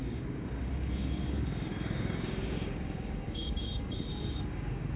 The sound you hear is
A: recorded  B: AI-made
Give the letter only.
B